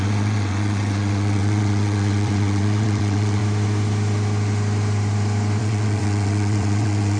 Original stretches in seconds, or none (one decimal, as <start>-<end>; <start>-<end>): 3.4-5.6